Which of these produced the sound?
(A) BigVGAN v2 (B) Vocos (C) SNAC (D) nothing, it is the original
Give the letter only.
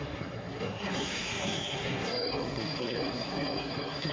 C